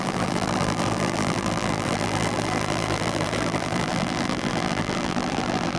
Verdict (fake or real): fake